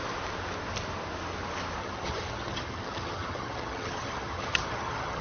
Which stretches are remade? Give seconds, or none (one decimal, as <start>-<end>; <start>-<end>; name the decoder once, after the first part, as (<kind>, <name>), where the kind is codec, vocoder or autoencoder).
1.8-5.2 (vocoder, HiFi-GAN)